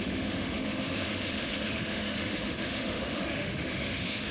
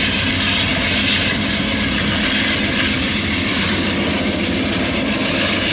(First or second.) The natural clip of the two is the second